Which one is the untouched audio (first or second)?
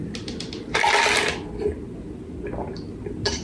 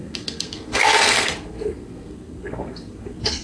first